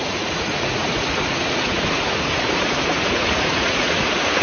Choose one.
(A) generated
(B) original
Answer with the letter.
A